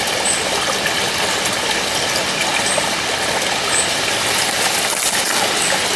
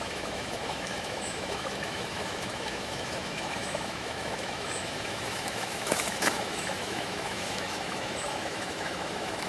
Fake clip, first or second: second